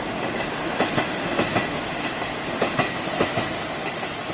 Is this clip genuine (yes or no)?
yes